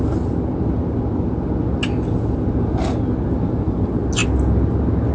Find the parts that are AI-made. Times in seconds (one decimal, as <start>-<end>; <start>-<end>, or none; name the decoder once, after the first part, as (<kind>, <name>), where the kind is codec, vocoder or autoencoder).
none